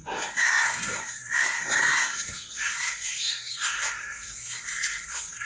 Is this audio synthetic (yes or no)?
yes